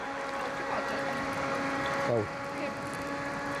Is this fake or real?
real